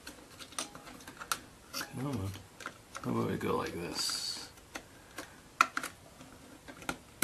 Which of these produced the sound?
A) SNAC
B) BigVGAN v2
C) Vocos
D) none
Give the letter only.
D